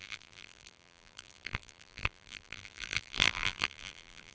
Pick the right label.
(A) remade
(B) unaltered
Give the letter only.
A